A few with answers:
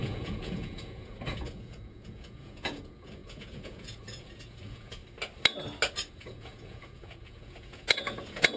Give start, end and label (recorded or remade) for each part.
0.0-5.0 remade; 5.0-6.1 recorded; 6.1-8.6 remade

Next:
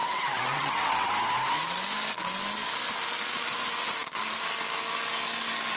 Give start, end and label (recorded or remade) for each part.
0.0-1.1 remade; 1.1-5.8 recorded

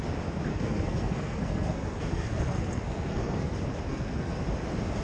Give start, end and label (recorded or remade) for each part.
0.0-0.5 recorded; 0.5-3.5 remade; 3.5-3.9 recorded; 3.9-4.4 remade; 4.4-5.0 recorded